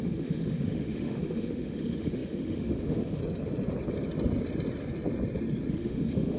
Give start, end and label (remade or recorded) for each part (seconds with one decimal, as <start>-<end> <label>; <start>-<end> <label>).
0.0-3.2 remade; 3.2-5.7 recorded; 5.7-6.4 remade